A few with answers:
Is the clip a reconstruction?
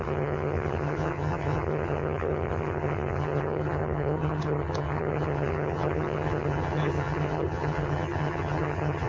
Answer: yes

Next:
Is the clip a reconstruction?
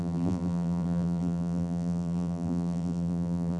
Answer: yes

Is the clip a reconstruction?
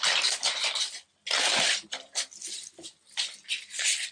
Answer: no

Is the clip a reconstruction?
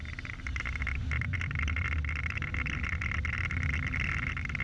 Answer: no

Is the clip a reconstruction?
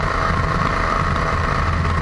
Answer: no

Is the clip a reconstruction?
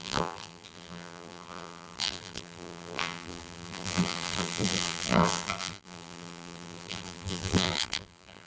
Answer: yes